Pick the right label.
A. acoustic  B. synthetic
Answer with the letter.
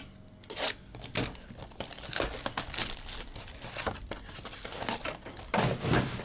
A